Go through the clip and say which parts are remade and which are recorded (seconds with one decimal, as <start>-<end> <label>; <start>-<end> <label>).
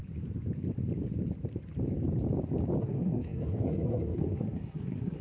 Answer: 0.0-2.8 recorded; 2.8-5.2 remade